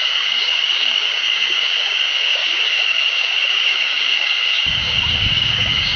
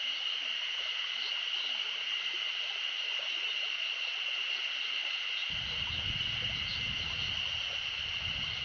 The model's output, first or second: first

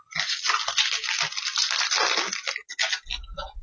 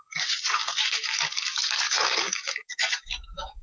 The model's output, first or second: second